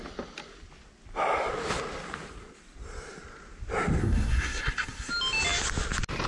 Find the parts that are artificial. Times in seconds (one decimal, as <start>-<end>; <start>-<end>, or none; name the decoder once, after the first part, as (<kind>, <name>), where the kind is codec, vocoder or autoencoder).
4.0-5.1 (codec, SNAC)